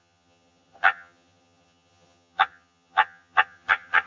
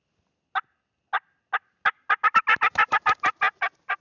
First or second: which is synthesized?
first